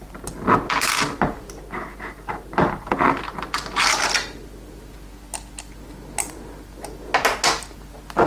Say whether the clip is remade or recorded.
recorded